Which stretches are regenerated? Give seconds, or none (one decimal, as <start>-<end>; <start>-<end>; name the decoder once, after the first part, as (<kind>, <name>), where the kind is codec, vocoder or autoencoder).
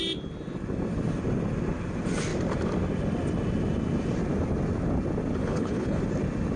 5.4-6.0 (codec, HILCodec)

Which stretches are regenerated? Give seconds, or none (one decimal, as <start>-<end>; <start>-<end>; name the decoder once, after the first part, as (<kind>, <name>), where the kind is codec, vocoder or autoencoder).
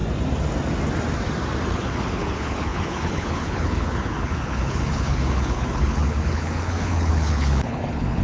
1.7-8.2 (codec, HILCodec)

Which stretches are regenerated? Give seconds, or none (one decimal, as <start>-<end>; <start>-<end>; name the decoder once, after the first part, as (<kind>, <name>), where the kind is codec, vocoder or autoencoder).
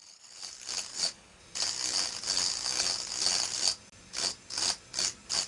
0.0-0.5 (codec, HILCodec); 0.9-1.4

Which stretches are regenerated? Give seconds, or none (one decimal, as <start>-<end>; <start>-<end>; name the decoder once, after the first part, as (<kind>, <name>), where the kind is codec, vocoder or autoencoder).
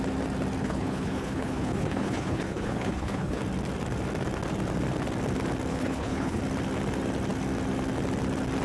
0.6-3.4 (codec, HILCodec); 5.7-6.4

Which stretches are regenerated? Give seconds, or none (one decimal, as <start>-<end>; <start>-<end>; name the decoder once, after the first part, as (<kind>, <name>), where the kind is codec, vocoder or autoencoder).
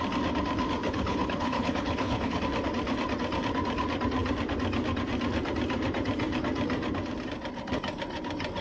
0.8-2.4 (codec, HILCodec)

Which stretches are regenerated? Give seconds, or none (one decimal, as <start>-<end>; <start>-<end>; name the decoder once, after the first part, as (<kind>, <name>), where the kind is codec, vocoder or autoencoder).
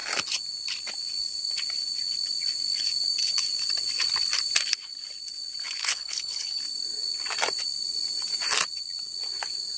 5.8-6.6 (codec, HILCodec)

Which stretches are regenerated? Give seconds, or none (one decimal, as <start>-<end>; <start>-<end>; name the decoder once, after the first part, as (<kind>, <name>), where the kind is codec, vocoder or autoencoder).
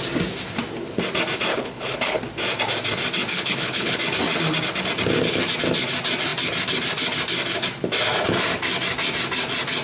1.5-2.2 (codec, HILCodec); 3.3-4.0